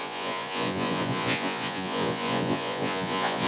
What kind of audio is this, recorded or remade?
remade